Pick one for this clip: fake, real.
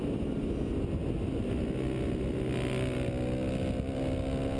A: real